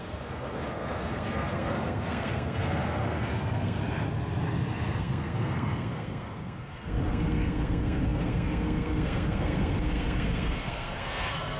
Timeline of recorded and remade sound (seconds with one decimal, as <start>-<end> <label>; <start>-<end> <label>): 0.0-3.8 remade; 3.8-5.0 recorded; 5.0-11.6 remade